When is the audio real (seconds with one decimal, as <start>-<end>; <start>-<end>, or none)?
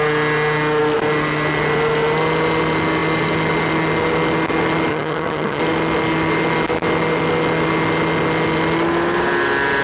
0.0-4.9; 5.6-9.8